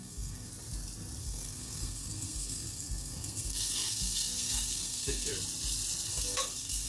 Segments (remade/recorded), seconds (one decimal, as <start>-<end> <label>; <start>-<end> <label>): 0.0-0.5 remade; 0.5-1.2 recorded; 1.2-5.3 remade; 5.3-6.1 recorded; 6.1-6.9 remade